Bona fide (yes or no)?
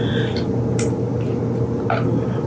yes